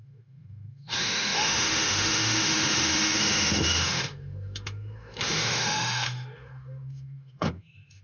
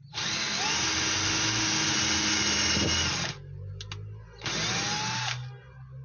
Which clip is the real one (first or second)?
second